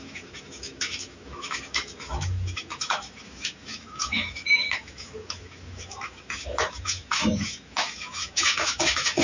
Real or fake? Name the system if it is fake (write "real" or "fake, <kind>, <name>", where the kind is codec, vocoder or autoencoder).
fake, autoencoder, DAC-VAE